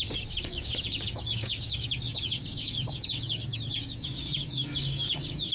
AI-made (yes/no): yes